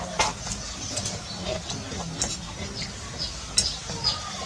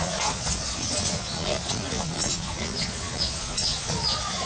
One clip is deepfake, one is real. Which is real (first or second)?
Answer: first